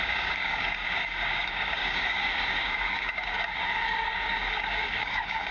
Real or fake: fake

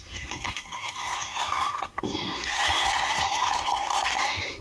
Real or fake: fake